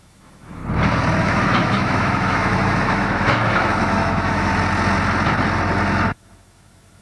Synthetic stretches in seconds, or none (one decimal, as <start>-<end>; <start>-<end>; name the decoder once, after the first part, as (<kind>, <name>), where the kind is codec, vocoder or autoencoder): 0.0-0.6 (autoencoder, DAC-VAE); 1.2-4.5; 6.1-7.0